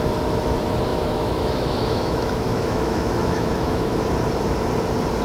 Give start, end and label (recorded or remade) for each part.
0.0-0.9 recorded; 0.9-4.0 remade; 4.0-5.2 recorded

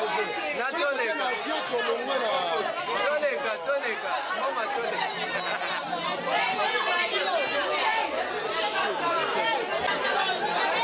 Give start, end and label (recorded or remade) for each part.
0.0-10.8 recorded

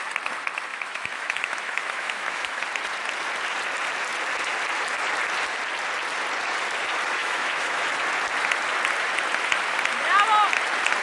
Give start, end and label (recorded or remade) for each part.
0.0-0.7 recorded; 0.7-2.6 remade; 2.6-7.2 recorded; 7.2-7.9 remade; 7.9-11.0 recorded

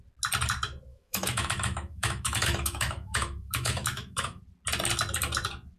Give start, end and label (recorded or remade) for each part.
0.0-0.9 recorded; 0.9-4.4 remade; 4.4-5.8 recorded

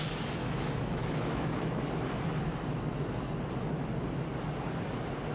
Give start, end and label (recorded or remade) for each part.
0.0-0.4 recorded; 0.4-1.8 remade; 1.8-5.3 recorded

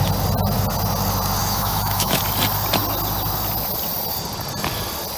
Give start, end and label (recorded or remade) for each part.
0.0-1.4 recorded; 1.4-2.2 remade; 2.2-5.2 recorded

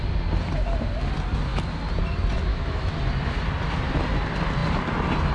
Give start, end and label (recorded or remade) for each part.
0.0-2.5 recorded; 2.5-3.0 remade; 3.0-5.3 recorded

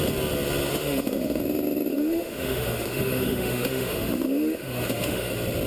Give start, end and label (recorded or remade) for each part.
0.0-0.7 recorded; 0.7-1.4 remade; 1.4-1.9 recorded; 1.9-5.3 remade; 5.3-5.7 recorded